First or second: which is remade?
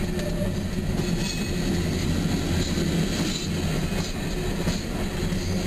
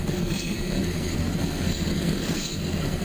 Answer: second